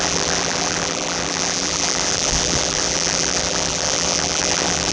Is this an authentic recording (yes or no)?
no